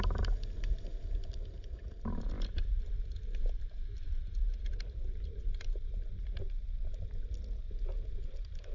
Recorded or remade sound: remade